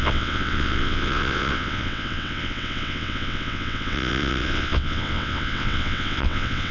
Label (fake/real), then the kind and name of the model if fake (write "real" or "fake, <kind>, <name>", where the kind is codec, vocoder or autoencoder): fake, vocoder, WaveNeXt